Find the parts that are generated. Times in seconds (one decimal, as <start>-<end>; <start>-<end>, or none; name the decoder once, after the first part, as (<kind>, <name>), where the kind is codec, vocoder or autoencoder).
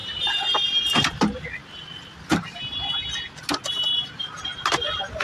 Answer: none